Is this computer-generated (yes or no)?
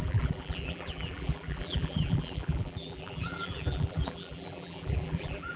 yes